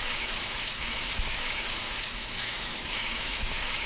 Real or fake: fake